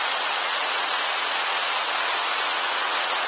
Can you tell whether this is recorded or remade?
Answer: remade